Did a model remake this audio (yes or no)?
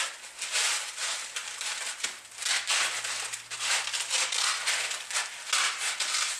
no